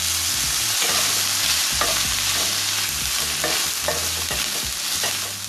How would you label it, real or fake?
real